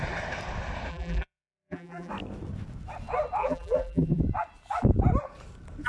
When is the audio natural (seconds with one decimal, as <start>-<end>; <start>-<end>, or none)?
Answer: 0.0-0.9; 2.1-3.4; 4.2-5.9